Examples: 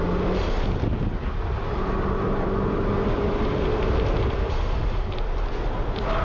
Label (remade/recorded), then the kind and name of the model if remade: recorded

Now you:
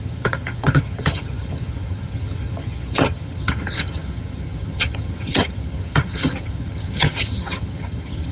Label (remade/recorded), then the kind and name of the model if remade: remade, vocoder, HiFi-GAN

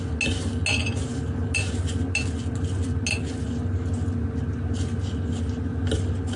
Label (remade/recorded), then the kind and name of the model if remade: recorded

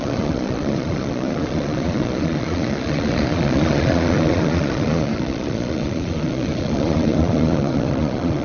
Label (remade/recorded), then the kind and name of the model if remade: remade, vocoder, Vocos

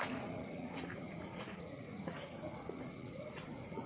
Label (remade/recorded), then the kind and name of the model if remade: remade, vocoder, Vocos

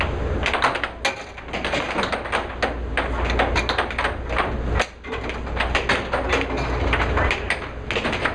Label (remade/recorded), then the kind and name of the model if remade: recorded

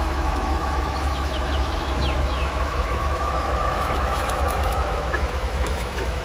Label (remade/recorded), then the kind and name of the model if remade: remade, autoencoder, DAC-VAE